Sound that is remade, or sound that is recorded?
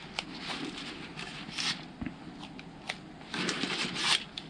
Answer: recorded